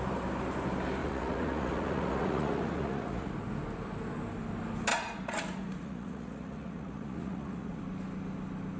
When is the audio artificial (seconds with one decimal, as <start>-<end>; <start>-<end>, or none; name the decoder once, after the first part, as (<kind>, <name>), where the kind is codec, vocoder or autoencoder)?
1.0-3.3 (vocoder, Vocos); 4.9-7.8